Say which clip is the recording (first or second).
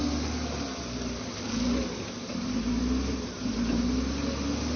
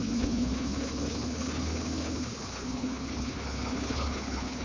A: first